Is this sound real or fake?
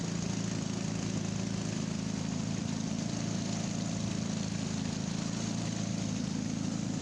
real